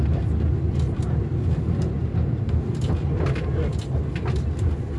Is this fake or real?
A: real